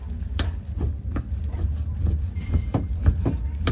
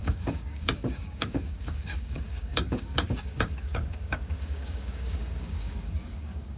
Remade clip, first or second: second